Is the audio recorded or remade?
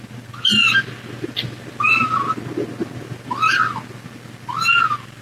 recorded